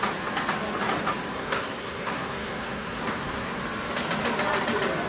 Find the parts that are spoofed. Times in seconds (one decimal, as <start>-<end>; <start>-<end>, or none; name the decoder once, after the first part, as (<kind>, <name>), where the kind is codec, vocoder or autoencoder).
1.3-3.6 (codec, SNAC)